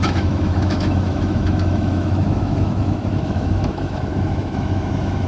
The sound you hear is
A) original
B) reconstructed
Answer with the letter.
B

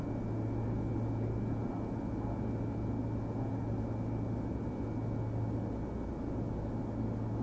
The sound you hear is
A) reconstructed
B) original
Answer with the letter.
B